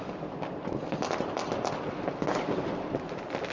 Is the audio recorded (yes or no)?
yes